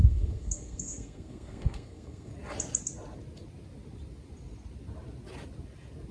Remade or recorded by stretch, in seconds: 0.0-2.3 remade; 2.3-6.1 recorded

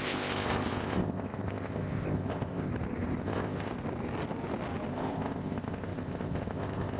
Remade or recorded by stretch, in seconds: 0.0-2.7 remade; 2.7-3.2 recorded; 3.2-3.7 remade; 3.7-4.9 recorded; 4.9-7.0 remade

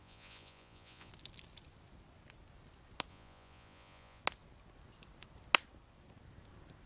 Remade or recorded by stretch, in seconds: 0.0-1.1 remade; 1.1-3.1 recorded; 3.1-4.2 remade; 4.2-6.9 recorded

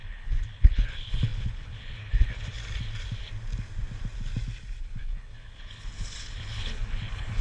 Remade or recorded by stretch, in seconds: 0.0-2.6 remade; 2.6-4.8 recorded; 4.8-7.4 remade